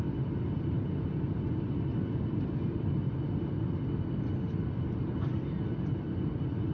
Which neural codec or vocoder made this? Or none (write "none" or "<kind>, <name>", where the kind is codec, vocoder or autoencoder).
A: none